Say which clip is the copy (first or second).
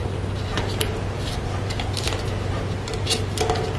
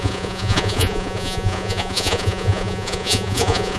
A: second